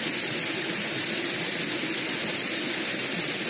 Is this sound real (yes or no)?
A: yes